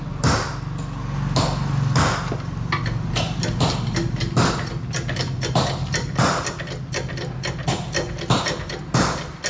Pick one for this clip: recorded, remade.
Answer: recorded